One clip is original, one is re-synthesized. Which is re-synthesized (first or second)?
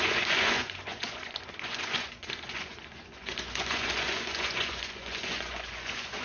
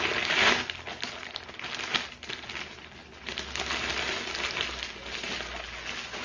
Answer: first